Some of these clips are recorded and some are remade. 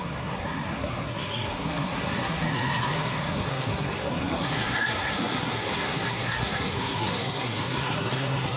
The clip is remade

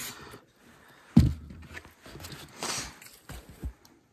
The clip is recorded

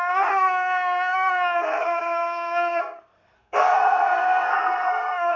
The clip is remade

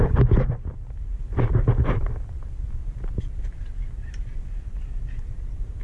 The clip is recorded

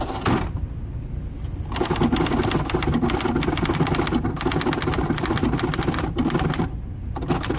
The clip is recorded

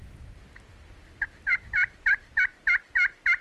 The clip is recorded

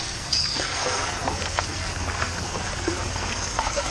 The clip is remade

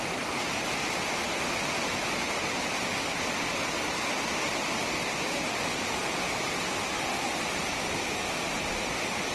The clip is recorded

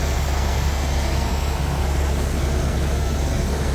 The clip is remade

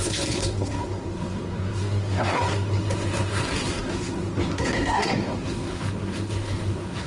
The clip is remade